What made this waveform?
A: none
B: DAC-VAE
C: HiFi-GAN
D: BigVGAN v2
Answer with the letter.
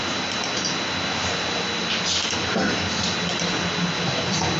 A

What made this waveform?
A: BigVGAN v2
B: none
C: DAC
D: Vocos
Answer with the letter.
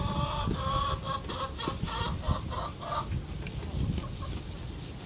B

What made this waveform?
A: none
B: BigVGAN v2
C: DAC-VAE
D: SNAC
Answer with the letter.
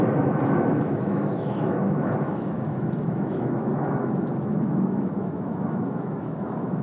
C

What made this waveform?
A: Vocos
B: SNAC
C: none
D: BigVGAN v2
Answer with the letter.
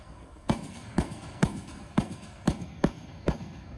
B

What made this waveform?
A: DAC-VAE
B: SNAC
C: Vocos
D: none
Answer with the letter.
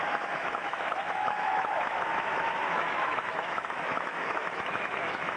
A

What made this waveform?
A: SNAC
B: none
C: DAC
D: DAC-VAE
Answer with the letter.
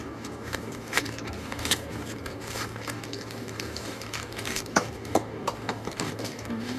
C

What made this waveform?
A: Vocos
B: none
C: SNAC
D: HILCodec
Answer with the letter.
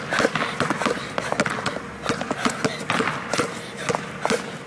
B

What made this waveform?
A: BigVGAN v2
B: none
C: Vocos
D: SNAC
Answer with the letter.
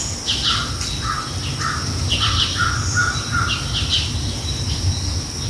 B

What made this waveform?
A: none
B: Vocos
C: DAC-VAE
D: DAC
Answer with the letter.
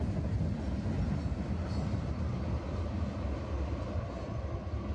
A